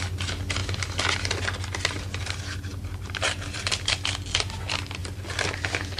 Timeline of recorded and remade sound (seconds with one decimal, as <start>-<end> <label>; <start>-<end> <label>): 0.0-2.7 recorded; 2.7-3.7 remade; 3.7-6.0 recorded